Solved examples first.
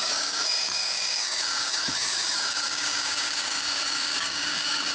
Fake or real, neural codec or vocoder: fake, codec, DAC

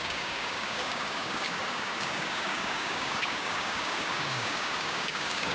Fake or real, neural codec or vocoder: fake, codec, DAC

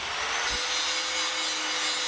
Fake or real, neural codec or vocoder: real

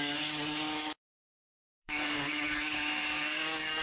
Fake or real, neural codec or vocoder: fake, codec, DAC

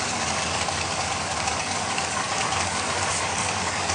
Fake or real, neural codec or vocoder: fake, codec, DAC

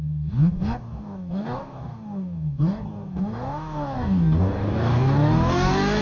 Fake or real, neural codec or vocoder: fake, codec, DAC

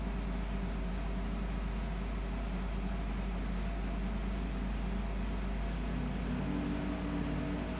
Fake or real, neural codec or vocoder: real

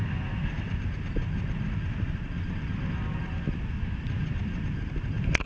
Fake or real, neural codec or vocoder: real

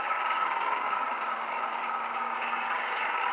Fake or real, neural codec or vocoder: fake, codec, DAC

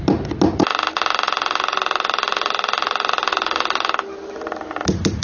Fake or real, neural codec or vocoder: real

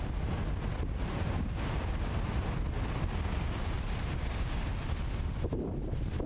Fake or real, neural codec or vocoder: real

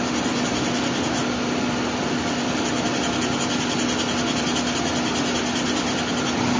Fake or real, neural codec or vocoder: real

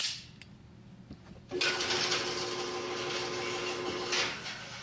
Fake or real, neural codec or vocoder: real